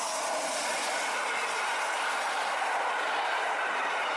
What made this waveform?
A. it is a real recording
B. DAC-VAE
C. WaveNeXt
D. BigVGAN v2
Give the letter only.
A